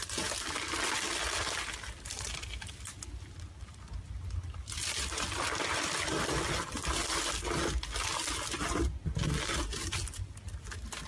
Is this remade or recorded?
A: recorded